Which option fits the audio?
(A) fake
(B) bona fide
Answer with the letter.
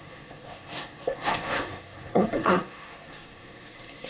A